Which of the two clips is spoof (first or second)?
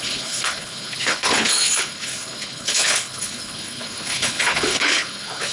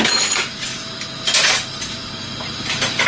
first